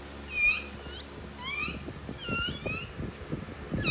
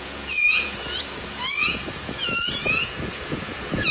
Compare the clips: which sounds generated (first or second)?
second